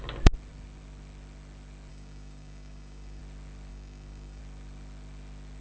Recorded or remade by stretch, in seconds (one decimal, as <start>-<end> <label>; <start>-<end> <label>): 0.0-1.9 recorded; 1.9-3.2 remade; 3.2-3.7 recorded; 3.7-4.4 remade; 4.4-5.6 recorded